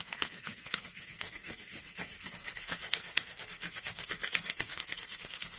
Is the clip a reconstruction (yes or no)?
yes